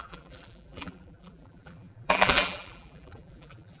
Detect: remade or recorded remade